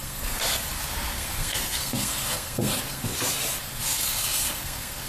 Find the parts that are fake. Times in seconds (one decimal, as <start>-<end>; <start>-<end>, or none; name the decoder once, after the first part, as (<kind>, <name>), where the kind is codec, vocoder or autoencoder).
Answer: 0.0-3.1 (codec, SNAC); 3.6-5.1